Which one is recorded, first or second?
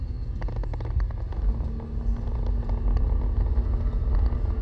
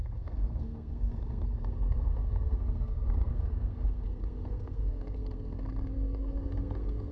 first